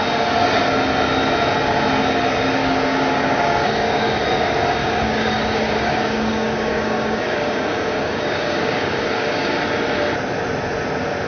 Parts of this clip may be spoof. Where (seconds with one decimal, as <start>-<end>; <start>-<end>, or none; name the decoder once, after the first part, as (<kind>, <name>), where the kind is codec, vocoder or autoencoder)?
2.6-4.1 (codec, DAC); 4.8-9.6